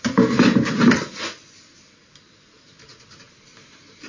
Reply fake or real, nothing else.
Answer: real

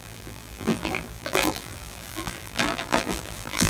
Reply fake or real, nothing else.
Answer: fake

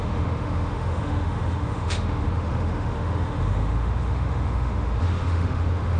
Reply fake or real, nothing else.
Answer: fake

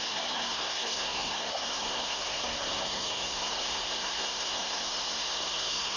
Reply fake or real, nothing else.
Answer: fake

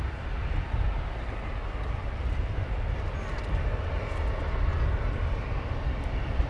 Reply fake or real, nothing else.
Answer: real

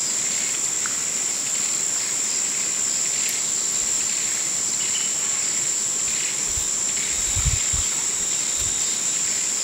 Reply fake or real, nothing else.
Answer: real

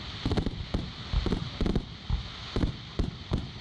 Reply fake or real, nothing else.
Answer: real